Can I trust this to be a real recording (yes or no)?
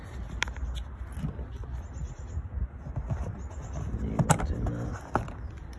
yes